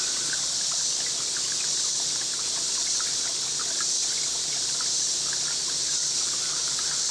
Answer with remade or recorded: recorded